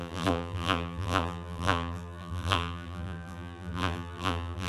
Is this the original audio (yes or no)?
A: no